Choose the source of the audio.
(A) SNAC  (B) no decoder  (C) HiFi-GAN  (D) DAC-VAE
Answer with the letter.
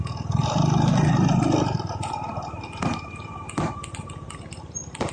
B